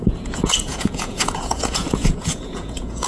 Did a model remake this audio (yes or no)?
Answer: yes